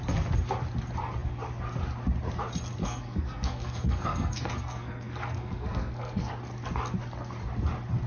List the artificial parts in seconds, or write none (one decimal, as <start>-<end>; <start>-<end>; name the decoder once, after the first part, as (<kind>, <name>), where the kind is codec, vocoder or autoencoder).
2.8-6.3 (codec, SNAC)